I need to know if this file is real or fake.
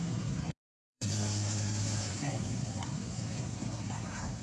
fake